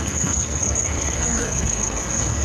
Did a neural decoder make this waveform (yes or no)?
yes